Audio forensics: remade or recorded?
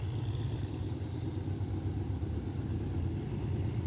recorded